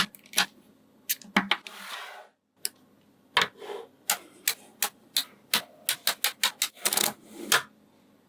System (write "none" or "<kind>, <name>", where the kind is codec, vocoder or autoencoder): none